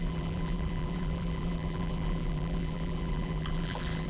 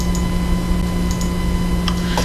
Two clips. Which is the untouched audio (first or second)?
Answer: second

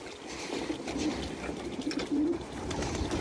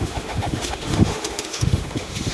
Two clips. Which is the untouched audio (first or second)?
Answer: first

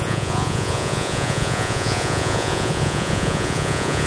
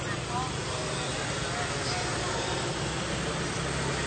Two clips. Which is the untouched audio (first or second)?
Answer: second